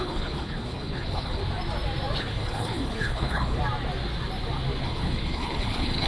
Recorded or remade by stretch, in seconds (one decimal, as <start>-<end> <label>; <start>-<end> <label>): 0.0-1.4 remade; 1.4-2.2 recorded; 2.2-3.6 remade; 3.6-4.8 recorded; 4.8-6.1 remade